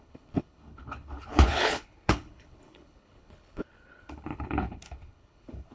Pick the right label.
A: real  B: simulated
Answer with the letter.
B